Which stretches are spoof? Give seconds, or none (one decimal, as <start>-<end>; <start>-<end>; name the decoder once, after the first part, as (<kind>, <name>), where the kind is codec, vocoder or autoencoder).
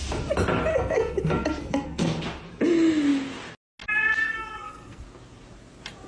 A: 0.7-2.2 (codec, SNAC); 4.2-5.0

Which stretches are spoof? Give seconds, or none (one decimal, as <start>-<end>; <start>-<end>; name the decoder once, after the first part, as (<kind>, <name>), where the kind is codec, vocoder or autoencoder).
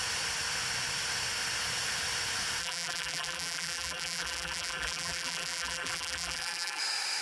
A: 2.6-6.8 (vocoder, BigVGAN v2)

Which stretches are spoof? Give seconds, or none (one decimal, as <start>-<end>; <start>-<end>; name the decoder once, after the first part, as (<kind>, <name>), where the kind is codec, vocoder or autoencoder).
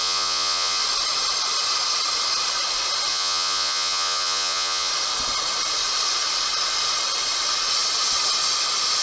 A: 0.0-0.8 (vocoder, Vocos); 3.1-4.9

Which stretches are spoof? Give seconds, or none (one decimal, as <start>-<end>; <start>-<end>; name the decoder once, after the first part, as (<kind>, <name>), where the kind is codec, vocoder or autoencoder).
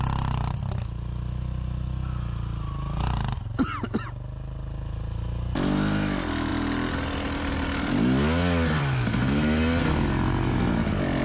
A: none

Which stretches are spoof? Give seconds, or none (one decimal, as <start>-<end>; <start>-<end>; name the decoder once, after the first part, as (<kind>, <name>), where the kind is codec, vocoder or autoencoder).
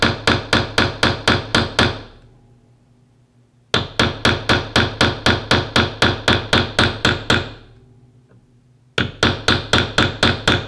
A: none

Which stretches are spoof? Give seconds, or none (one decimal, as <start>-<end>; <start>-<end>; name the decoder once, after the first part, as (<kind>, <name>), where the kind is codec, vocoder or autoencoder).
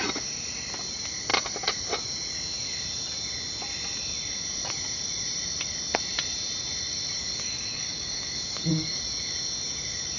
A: 7.2-9.0 (codec, DAC)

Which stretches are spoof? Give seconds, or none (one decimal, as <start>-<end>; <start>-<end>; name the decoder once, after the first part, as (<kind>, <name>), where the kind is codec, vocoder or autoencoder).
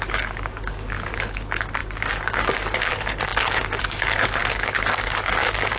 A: 0.0-5.8 (codec, DAC)